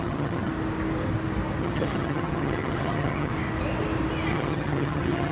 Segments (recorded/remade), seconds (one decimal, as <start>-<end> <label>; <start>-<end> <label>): 0.0-0.5 remade; 0.5-1.6 recorded; 1.6-3.3 remade; 3.3-4.3 recorded; 4.3-5.3 remade